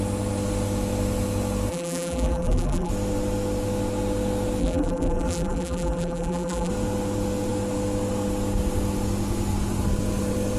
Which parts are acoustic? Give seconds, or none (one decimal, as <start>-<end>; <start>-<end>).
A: 0.0-1.7; 2.9-4.6; 6.7-10.6